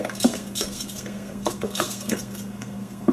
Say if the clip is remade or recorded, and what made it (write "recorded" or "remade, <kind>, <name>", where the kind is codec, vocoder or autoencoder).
remade, codec, SNAC